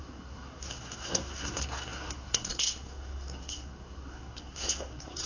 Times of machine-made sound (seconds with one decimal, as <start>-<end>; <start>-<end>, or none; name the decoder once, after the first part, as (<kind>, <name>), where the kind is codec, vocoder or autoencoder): 0.0-5.3 (codec, SNAC)